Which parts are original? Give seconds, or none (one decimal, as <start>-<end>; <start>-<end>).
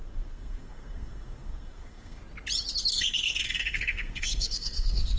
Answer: 2.2-2.9